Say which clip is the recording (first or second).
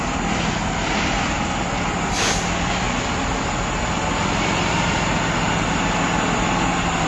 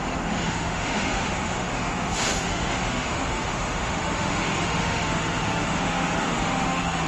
first